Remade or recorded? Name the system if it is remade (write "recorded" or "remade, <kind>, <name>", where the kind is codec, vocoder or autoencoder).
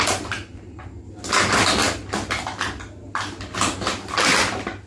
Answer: recorded